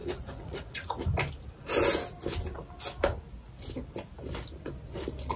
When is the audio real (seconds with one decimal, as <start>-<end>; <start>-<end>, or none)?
0.9-5.4